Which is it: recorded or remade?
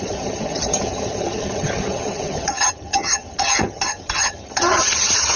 remade